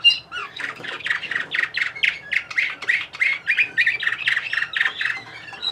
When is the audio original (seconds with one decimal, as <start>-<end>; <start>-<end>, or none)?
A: 0.0-0.4; 1.0-5.7